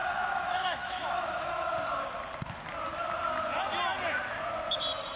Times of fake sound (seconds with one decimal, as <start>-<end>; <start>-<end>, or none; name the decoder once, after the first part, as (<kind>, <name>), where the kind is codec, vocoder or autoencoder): 0.0-1.7 (autoencoder, DAC-VAE)